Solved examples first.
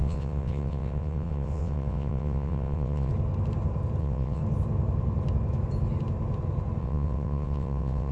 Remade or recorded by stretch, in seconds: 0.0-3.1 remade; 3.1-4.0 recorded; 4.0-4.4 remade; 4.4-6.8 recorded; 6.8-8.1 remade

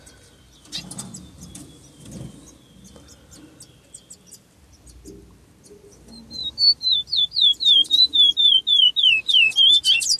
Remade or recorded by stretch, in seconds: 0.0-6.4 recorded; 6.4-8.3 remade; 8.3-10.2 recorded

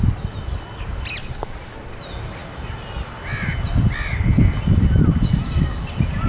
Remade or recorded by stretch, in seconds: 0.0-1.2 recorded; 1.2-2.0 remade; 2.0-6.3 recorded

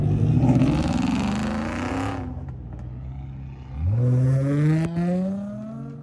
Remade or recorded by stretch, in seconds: 0.0-6.0 recorded

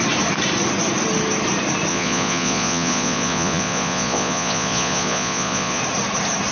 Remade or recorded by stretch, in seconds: 0.0-1.9 recorded; 1.9-5.8 remade; 5.8-6.5 recorded

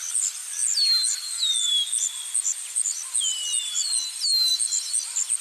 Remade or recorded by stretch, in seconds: 0.0-5.4 recorded